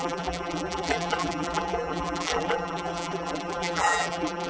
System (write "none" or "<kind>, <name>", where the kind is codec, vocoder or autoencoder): vocoder, BigVGAN v2